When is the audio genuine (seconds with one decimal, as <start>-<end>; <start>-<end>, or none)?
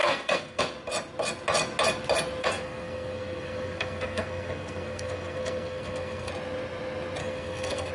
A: 0.6-2.4; 6.3-7.2